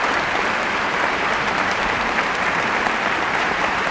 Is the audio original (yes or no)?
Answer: no